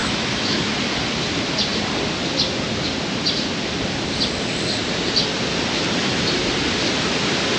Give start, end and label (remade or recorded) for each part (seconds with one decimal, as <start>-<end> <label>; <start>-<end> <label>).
0.0-0.7 remade; 0.7-7.6 recorded